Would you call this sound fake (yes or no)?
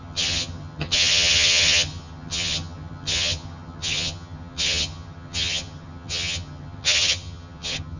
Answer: yes